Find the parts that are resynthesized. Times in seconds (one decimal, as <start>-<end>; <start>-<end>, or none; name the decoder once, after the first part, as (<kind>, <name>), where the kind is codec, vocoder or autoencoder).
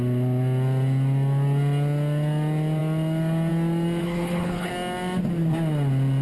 4.0-4.7 (codec, HILCodec)